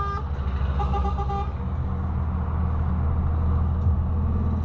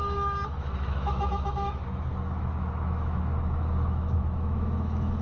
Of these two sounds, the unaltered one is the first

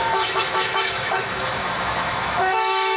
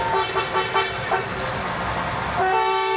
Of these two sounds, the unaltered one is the second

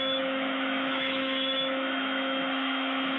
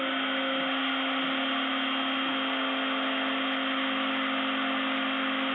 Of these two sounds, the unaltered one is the second